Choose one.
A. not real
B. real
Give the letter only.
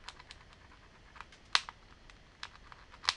B